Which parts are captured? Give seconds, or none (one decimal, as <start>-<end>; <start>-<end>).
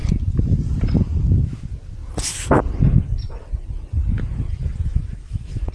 0.0-4.9